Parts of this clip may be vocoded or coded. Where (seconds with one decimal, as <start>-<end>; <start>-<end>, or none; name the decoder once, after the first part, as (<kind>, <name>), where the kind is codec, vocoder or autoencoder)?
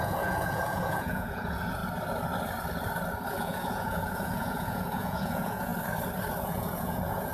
0.0-1.8 (vocoder, Vocos); 3.3-5.7; 6.4-7.3